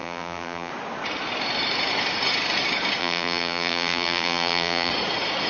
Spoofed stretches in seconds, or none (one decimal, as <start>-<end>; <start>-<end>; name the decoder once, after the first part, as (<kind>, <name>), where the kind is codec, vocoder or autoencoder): 0.0-0.7 (vocoder, BigVGAN v2); 3.0-4.9